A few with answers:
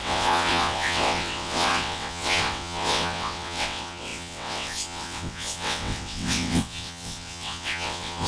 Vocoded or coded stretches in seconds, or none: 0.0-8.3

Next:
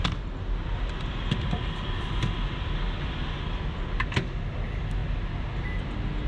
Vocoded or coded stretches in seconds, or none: none

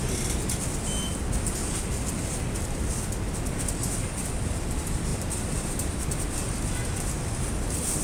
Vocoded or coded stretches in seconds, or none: 5.1-6.0